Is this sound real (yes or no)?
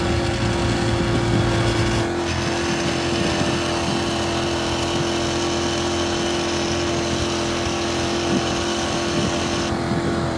yes